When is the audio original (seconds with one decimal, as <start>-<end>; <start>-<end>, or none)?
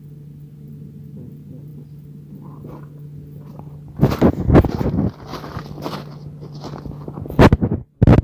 0.0-8.2